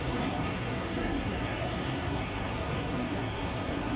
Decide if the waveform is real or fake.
fake